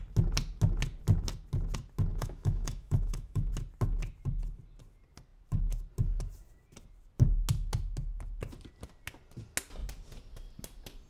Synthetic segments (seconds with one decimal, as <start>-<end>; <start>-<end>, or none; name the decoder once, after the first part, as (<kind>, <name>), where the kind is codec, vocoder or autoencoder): 2.1-3.5 (autoencoder, DAC-VAE)